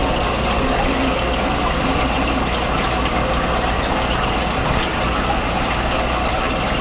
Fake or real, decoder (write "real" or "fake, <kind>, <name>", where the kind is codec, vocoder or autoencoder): real